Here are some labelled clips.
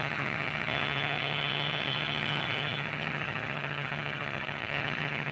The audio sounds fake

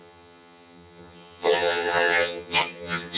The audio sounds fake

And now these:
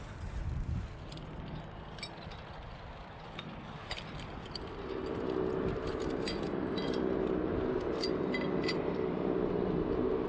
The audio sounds real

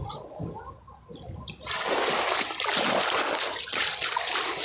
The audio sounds real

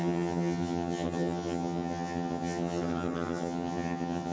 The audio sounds fake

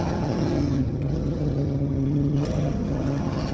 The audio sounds fake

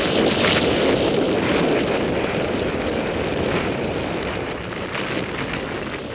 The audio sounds real